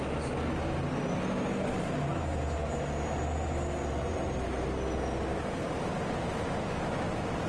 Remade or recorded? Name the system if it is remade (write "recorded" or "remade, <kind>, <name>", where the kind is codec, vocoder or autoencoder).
recorded